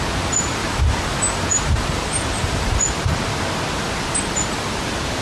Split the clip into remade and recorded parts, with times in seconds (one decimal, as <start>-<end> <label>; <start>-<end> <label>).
0.0-0.6 recorded; 0.6-2.7 remade; 2.7-5.2 recorded